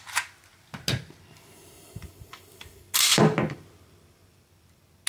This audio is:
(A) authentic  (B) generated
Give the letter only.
A